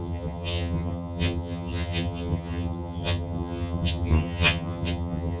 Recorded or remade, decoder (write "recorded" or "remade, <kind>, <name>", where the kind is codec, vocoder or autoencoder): remade, vocoder, HiFi-GAN